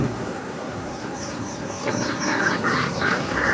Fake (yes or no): yes